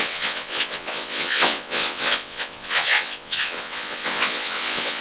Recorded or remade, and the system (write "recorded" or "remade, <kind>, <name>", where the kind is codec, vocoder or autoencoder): remade, vocoder, WaveNeXt